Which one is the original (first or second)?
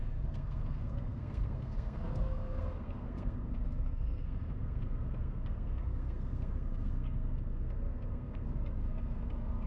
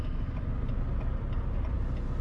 second